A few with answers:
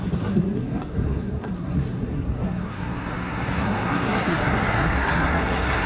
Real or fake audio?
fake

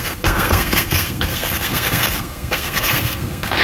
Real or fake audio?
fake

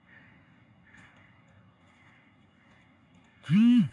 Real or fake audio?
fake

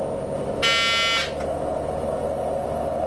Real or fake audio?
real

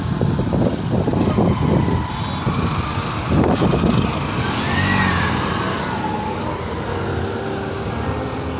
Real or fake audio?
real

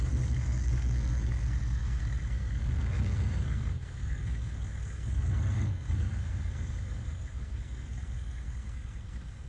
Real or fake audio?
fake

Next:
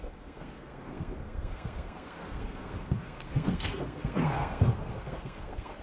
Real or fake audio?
fake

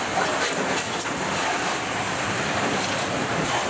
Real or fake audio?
real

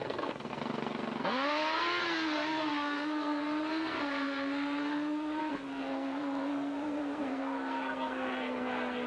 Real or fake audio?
fake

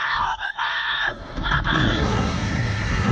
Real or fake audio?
fake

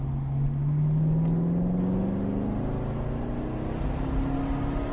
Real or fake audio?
real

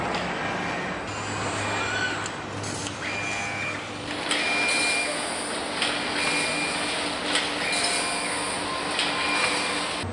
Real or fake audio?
real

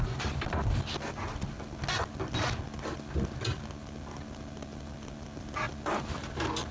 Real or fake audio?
real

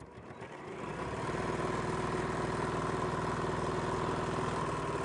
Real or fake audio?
real